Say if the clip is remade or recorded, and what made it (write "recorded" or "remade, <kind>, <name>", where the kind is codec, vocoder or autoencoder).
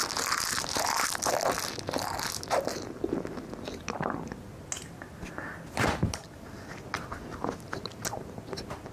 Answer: recorded